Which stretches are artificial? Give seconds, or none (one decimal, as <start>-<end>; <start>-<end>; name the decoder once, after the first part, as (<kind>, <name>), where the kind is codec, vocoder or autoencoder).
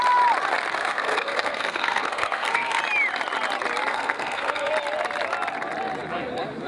0.8-2.8 (codec, SNAC); 3.9-4.7